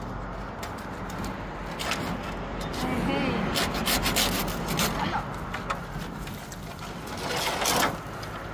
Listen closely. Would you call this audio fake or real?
real